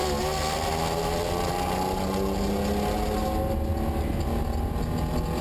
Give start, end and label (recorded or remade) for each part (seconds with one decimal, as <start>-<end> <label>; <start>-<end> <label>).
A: 0.0-5.4 recorded